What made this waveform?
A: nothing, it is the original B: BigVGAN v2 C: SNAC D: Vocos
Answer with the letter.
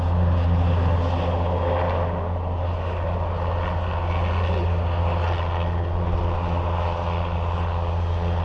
A